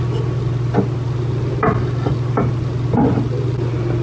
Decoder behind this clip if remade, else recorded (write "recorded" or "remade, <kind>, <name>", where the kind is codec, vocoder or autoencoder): recorded